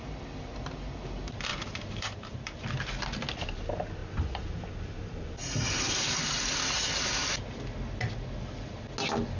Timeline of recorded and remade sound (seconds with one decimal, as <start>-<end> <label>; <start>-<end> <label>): 0.0-1.5 recorded; 1.5-2.7 remade; 2.7-5.4 recorded; 5.4-6.2 remade; 6.2-9.4 recorded